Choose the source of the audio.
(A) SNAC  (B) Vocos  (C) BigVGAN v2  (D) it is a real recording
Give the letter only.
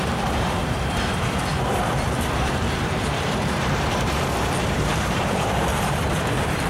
C